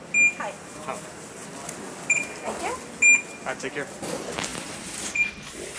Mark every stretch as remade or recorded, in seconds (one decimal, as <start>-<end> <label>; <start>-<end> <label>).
0.0-5.8 recorded